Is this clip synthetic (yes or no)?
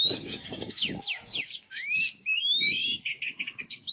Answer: yes